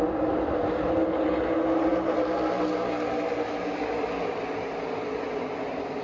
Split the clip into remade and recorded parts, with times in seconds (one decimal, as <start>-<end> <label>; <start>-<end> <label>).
0.0-6.0 recorded